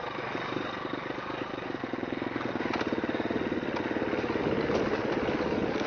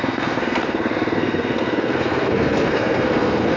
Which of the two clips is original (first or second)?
first